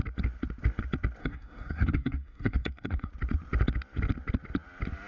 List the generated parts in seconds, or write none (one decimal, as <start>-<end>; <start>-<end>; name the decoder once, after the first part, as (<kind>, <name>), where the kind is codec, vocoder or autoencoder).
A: 1.2-3.1 (codec, SNAC)